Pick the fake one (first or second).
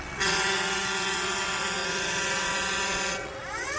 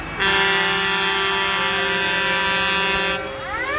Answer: first